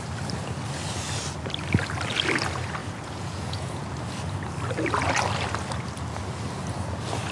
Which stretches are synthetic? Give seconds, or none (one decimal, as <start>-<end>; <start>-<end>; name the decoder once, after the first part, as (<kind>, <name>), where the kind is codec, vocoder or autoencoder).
2.8-3.9 (vocoder, Vocos)